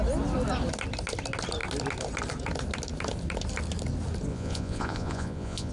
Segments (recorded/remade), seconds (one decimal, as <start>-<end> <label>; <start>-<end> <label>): 0.0-4.3 recorded; 4.3-5.7 remade